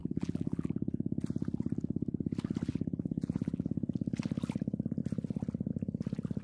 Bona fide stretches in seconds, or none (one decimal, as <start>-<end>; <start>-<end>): 0.7-2.7; 3.7-6.4